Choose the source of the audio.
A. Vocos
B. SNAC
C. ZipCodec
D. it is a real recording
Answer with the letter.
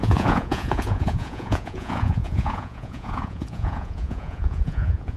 A